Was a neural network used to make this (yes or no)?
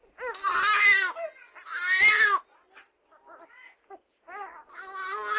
no